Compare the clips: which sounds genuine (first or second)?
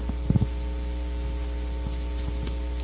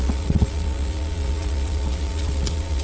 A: first